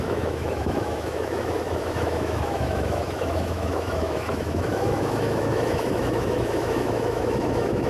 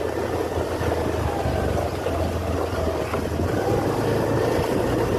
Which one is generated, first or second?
first